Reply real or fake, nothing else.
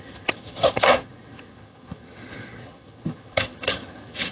fake